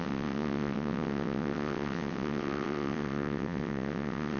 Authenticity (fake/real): fake